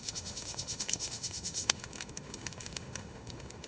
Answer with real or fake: fake